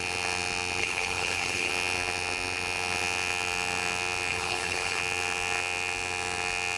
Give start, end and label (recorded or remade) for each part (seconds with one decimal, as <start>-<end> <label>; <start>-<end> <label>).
0.0-0.8 recorded; 0.8-1.7 remade; 1.7-4.3 recorded; 4.3-5.0 remade; 5.0-6.8 recorded